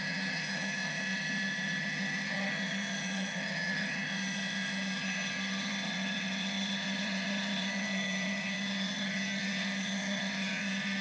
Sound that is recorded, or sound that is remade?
remade